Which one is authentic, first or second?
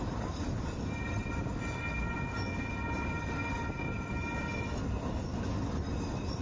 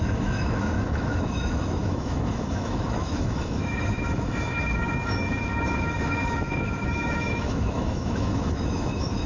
first